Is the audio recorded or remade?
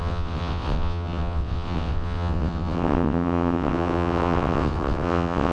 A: remade